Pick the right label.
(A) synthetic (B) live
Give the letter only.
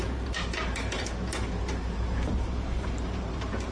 A